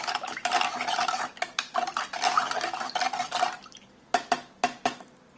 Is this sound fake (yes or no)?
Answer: no